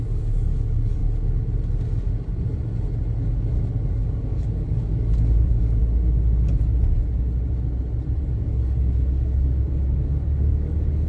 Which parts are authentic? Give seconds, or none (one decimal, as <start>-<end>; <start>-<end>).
1.0-3.9; 5.8-8.2